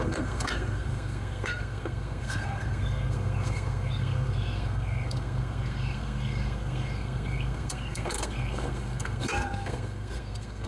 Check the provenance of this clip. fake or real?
fake